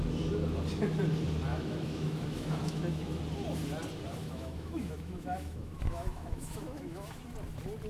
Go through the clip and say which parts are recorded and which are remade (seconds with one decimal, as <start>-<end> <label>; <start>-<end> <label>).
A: 0.0-1.5 recorded; 1.5-3.2 remade; 3.2-4.2 recorded; 4.2-7.2 remade; 7.2-7.9 recorded